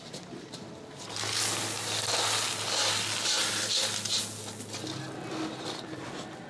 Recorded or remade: recorded